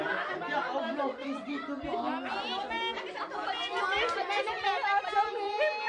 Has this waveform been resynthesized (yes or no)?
no